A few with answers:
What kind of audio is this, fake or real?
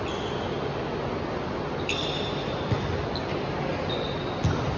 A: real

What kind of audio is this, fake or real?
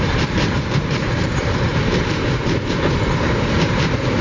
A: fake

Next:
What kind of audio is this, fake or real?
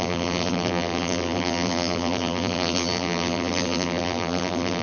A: fake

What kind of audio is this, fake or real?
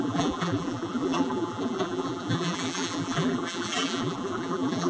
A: fake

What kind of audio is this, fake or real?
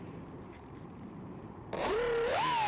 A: fake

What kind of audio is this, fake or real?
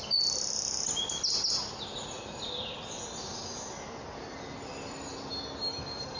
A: real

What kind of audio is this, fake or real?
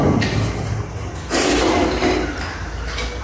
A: real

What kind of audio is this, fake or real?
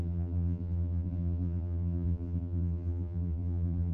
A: fake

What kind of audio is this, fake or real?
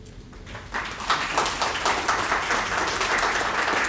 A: real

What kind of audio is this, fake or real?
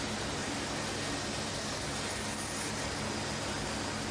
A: real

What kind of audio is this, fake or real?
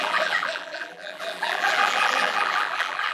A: fake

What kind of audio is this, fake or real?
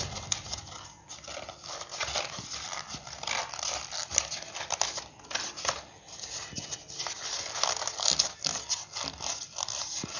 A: real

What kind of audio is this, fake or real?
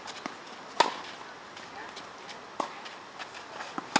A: real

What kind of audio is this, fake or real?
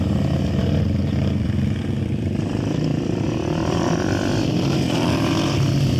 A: fake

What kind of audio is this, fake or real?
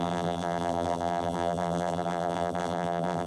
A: fake